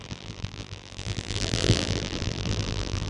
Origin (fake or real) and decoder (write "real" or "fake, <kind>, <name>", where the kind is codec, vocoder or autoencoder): fake, vocoder, BigVGAN v2